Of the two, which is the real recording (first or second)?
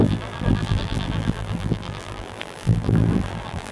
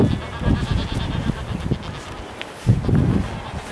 second